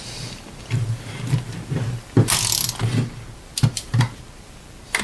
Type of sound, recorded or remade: recorded